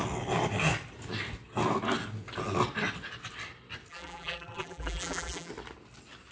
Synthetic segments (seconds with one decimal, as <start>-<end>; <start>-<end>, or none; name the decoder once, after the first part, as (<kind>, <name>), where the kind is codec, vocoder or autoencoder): 3.9-5.5 (vocoder, BigVGAN v2)